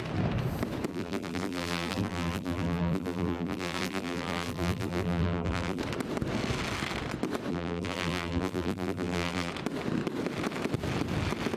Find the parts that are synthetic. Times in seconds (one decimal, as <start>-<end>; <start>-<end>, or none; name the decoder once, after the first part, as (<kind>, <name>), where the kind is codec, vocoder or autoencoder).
0.9-5.8 (vocoder, BigVGAN v2); 7.5-9.5